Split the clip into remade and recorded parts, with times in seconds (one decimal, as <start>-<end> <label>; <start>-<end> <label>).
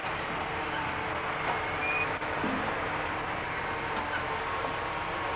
0.0-5.4 recorded